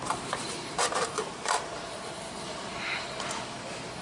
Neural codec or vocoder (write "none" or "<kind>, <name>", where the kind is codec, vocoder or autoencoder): vocoder, BigVGAN v2